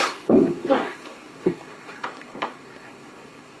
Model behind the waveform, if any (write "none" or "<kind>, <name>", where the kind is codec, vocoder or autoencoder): codec, SNAC